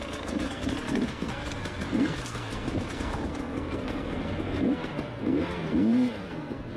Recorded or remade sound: remade